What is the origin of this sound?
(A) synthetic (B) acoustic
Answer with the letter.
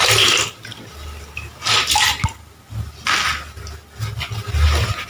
B